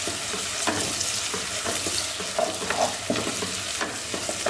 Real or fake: real